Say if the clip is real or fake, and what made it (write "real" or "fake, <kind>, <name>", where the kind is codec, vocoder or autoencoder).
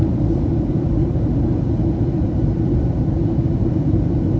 fake, vocoder, BigVGAN v2